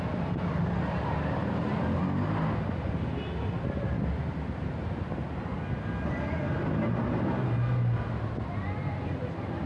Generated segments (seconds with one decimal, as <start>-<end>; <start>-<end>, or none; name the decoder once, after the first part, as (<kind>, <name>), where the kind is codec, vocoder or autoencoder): none